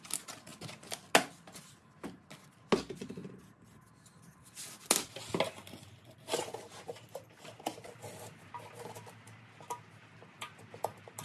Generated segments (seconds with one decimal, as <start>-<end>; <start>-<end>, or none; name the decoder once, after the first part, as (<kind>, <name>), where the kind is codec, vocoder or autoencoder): none